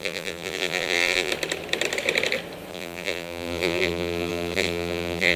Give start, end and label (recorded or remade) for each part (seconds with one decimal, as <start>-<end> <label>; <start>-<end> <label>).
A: 0.0-1.3 remade; 1.3-2.7 recorded; 2.7-5.4 remade